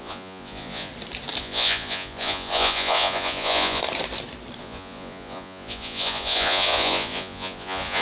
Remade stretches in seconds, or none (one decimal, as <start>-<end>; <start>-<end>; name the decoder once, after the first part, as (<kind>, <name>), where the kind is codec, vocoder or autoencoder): 0.0-0.9 (vocoder, Vocos); 1.4-3.8; 4.6-8.0